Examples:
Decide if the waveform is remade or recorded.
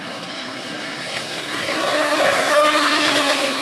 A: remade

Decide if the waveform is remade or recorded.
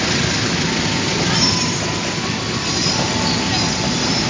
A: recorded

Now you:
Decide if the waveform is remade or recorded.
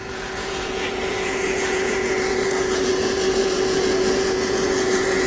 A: remade